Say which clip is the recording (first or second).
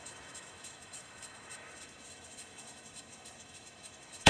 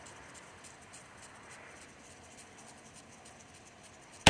second